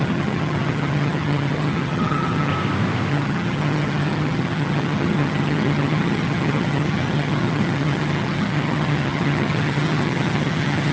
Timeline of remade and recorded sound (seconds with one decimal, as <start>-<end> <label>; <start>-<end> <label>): 0.0-2.5 remade; 2.5-3.1 recorded; 3.1-10.9 remade